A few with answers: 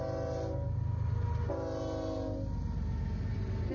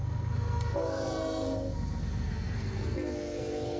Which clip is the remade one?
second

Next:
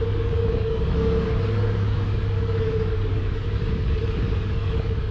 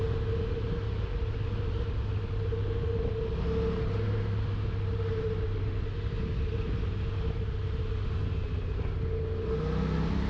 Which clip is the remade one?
first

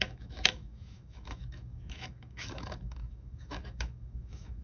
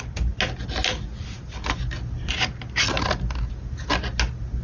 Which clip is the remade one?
first